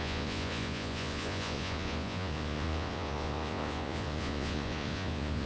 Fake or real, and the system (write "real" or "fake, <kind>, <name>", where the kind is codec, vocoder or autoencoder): fake, vocoder, Vocos